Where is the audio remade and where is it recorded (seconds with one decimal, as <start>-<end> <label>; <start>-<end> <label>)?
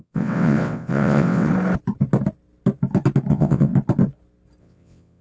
0.0-1.5 remade; 1.5-3.3 recorded; 3.3-3.7 remade; 3.7-4.6 recorded; 4.6-5.2 remade